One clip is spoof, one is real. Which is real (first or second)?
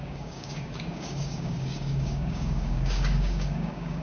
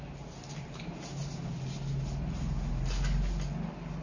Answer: second